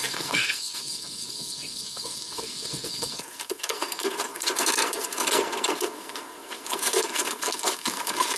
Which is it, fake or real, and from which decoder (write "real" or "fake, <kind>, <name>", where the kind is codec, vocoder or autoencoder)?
fake, codec, SNAC